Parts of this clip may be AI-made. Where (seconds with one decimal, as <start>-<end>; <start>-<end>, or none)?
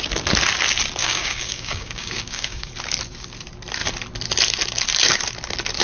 1.0-2.7